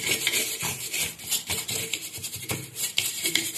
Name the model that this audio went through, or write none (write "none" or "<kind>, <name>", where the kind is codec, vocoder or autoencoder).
vocoder, BigVGAN v2